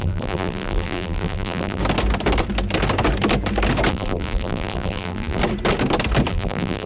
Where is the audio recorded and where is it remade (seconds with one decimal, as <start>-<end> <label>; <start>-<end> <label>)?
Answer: 0.0-1.8 remade; 1.8-3.9 recorded; 3.9-5.4 remade; 5.4-6.3 recorded; 6.3-6.9 remade